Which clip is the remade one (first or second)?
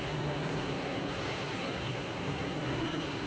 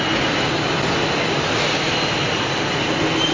first